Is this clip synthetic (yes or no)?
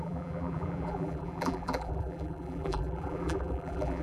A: yes